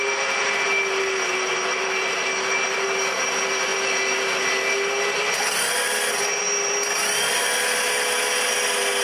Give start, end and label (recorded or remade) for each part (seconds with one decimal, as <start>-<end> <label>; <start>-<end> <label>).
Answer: 0.0-9.0 recorded